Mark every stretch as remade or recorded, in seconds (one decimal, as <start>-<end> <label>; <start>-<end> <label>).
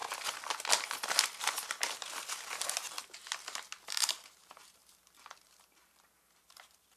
0.0-4.0 recorded; 4.0-4.8 remade; 4.8-5.4 recorded; 5.4-7.0 remade